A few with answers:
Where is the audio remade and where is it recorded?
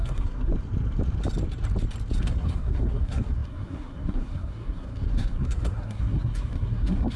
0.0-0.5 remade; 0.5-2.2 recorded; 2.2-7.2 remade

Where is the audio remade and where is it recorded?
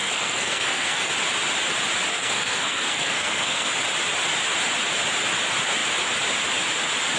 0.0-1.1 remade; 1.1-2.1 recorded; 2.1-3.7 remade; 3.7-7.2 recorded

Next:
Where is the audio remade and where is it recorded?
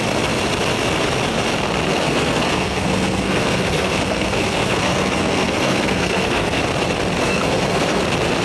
0.0-1.9 recorded; 1.9-6.6 remade; 6.6-7.2 recorded; 7.2-8.0 remade; 8.0-8.4 recorded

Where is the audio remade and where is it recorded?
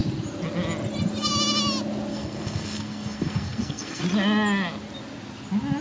0.0-2.1 recorded; 2.1-4.0 remade; 4.0-5.8 recorded